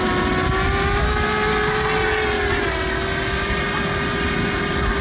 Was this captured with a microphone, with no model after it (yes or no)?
yes